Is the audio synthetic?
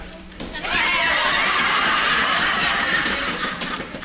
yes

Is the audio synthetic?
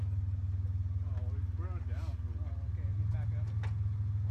no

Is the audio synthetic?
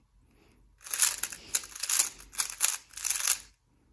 no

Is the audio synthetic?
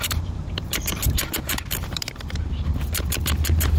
yes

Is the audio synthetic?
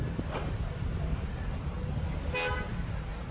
no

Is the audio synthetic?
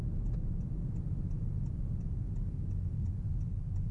no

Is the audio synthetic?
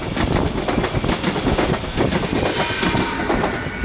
no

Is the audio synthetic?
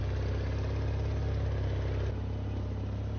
no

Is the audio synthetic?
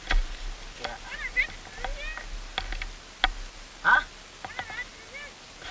no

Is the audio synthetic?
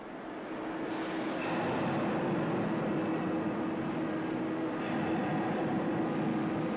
no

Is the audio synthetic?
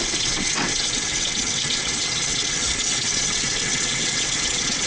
yes